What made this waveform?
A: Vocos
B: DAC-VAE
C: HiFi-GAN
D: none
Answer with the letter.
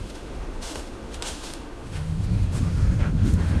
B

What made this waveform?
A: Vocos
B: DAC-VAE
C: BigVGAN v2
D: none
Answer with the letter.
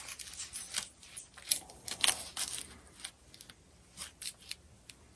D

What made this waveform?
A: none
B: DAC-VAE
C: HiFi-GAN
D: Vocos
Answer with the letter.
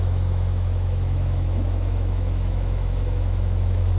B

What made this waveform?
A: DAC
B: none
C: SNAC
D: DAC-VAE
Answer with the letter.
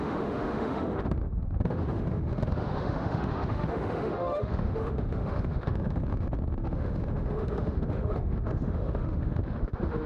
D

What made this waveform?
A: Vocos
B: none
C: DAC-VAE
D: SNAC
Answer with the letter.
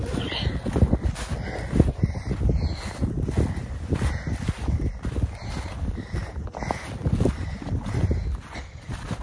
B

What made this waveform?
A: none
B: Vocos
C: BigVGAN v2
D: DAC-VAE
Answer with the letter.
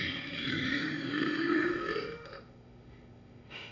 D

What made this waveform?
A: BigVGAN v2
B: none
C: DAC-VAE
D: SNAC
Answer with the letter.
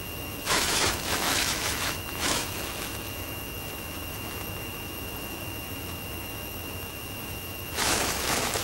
C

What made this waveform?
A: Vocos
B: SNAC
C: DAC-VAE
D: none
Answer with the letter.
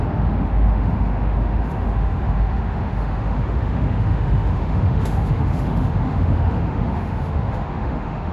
C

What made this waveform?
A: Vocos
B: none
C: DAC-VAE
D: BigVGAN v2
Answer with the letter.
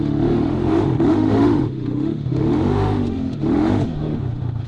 C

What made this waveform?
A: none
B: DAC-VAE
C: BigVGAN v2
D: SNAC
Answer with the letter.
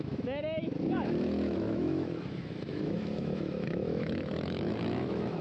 B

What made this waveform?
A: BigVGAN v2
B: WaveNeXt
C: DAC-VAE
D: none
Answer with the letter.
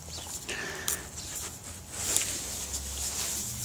D